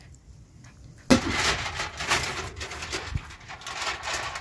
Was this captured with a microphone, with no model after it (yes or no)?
yes